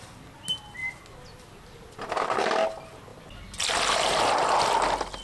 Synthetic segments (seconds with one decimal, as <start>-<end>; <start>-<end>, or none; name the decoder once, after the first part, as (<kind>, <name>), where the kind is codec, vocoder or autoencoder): 0.8-2.5 (vocoder, BigVGAN v2)